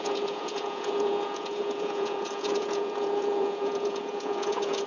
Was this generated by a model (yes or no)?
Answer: yes